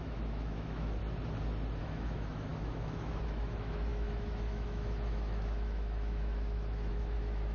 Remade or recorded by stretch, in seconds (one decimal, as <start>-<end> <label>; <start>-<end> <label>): 0.0-1.0 remade; 1.0-1.8 recorded; 1.8-7.5 remade